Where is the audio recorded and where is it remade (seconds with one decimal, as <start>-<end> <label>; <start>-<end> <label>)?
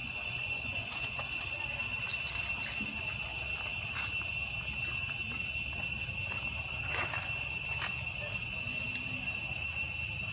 0.0-1.6 remade; 1.6-10.3 recorded